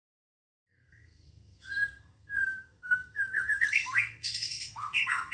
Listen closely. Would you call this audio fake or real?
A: fake